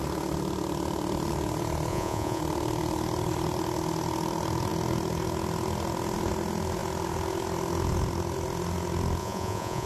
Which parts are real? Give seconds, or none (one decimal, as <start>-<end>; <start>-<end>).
0.0-1.9; 2.4-9.2